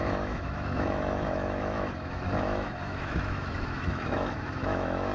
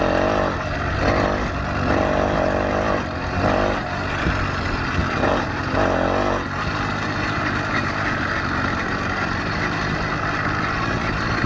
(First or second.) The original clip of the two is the second